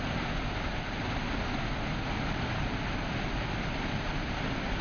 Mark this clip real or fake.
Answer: real